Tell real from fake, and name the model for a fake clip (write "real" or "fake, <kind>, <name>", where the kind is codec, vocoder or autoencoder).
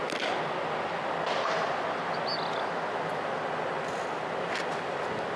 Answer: real